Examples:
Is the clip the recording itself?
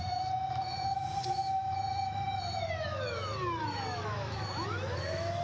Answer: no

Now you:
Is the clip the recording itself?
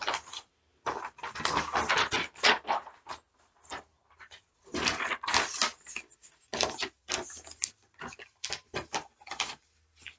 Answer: yes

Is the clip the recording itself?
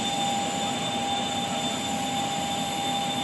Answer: yes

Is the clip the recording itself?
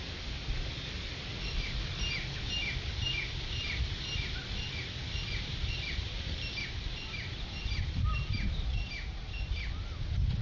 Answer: yes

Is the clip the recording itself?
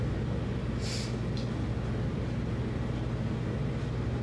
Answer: yes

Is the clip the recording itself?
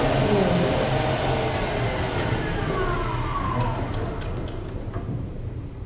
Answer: yes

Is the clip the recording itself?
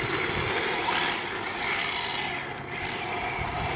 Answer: yes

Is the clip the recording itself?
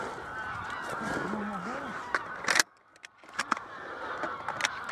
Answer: yes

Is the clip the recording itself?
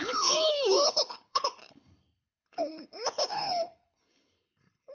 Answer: no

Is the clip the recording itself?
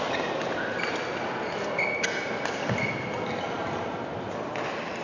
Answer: yes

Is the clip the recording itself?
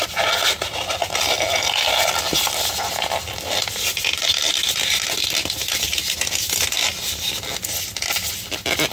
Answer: yes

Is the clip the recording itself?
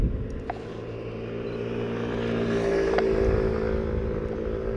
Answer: yes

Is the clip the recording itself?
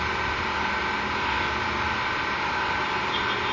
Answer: yes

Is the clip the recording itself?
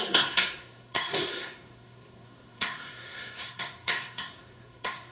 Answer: no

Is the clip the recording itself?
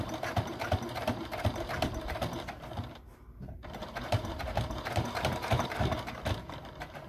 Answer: no